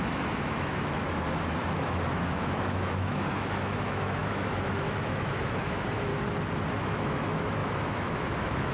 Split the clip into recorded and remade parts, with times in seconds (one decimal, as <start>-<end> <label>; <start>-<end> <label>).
0.0-6.1 remade; 6.1-6.7 recorded; 6.7-8.7 remade

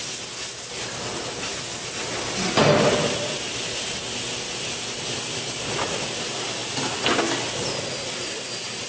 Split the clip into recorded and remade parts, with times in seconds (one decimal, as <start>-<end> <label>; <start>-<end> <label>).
0.0-8.9 recorded

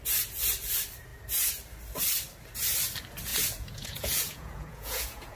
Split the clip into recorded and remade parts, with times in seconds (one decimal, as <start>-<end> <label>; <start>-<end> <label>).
0.0-3.3 recorded; 3.3-5.4 remade

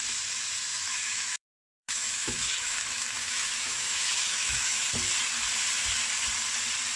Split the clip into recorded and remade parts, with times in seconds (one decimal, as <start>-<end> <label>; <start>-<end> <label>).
0.0-0.7 recorded; 0.7-4.9 remade; 4.9-7.0 recorded

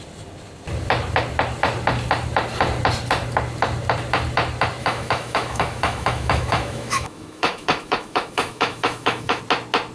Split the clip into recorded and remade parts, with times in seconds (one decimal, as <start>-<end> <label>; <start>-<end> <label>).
0.0-4.8 recorded; 4.8-9.4 remade; 9.4-9.9 recorded

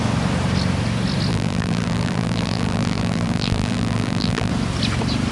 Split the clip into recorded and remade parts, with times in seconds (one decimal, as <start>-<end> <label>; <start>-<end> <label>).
0.0-1.3 recorded; 1.3-4.5 remade; 4.5-5.3 recorded

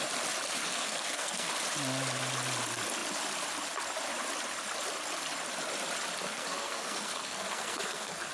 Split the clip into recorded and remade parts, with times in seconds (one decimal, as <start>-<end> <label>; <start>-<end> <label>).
0.0-0.6 recorded; 0.6-1.5 remade; 1.5-6.2 recorded; 6.2-8.3 remade